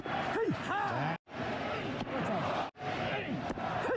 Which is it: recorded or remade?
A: recorded